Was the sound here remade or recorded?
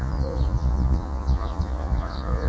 remade